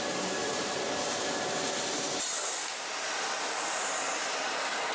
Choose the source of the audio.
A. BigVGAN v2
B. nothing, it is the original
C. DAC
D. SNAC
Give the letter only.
B